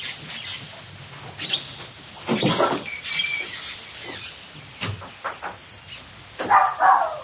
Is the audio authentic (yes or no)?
yes